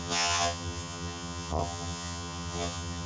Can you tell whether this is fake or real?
fake